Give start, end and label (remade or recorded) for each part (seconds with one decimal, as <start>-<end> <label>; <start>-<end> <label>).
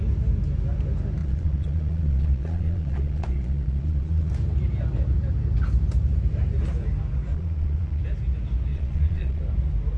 0.0-1.2 recorded; 1.2-4.3 remade; 4.3-7.3 recorded; 7.3-8.0 remade; 8.0-8.7 recorded; 8.7-9.4 remade; 9.4-10.0 recorded